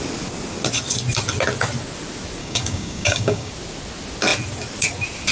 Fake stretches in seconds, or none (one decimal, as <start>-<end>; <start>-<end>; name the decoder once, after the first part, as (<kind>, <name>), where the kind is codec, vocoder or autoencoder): 2.4-3.5 (codec, DAC)